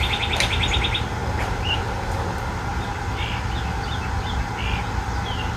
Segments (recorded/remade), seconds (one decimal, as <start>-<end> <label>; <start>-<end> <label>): 0.0-5.6 recorded